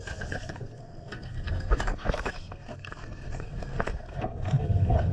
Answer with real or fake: fake